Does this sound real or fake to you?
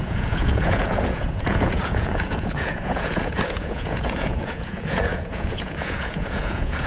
fake